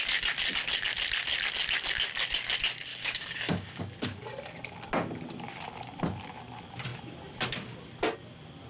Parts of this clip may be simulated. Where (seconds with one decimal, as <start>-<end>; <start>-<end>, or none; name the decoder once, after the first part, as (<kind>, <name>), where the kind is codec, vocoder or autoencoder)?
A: 2.9-3.8 (codec, DAC)